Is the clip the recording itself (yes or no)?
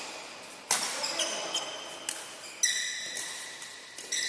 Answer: yes